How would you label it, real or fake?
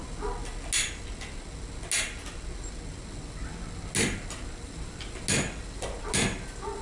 real